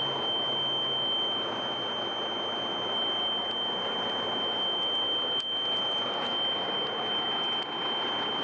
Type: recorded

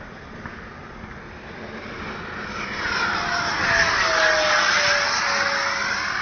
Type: recorded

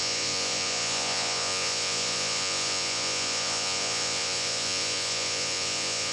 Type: remade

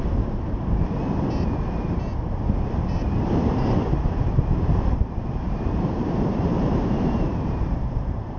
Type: remade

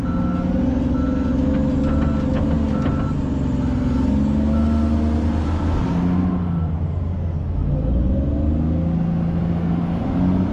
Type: recorded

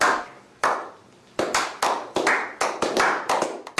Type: recorded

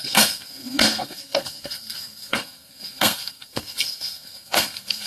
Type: remade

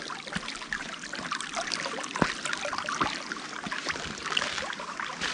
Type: recorded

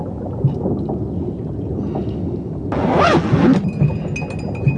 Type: recorded